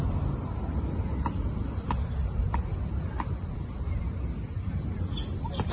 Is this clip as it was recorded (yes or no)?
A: no